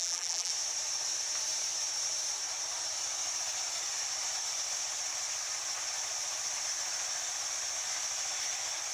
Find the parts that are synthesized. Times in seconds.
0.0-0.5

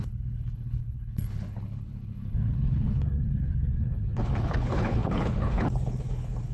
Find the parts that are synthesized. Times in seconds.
0.0-6.5

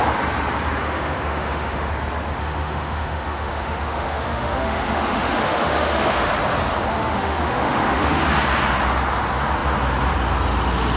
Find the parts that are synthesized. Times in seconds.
0.8-1.9; 2.4-6.3; 6.9-8.2

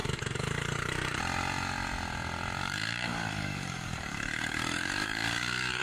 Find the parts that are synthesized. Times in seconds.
0.0-1.2; 2.6-5.8

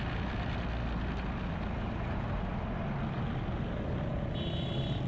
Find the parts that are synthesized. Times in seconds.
none

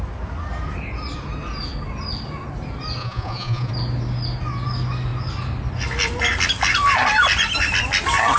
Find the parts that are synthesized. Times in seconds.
3.0-3.7

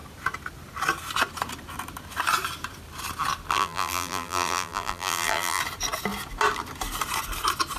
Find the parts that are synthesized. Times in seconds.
3.5-5.6

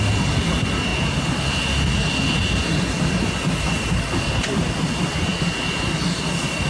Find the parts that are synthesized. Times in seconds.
none